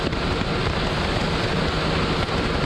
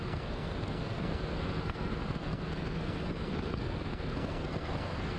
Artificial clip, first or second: second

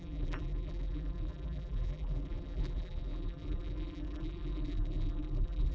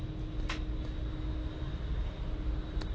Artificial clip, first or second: first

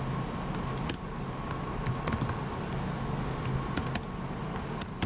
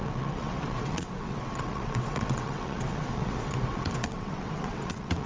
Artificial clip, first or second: second